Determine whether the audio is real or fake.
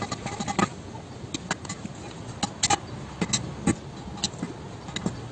real